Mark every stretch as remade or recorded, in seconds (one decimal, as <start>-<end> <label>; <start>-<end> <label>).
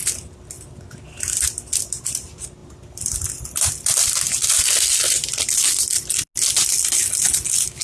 0.0-7.8 recorded